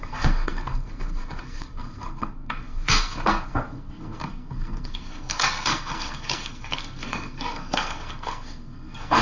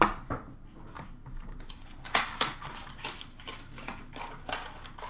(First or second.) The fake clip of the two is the first